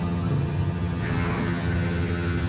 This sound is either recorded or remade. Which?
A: remade